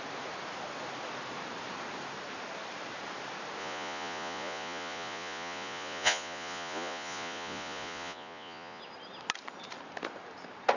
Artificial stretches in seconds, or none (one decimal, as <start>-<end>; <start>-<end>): 3.6-8.8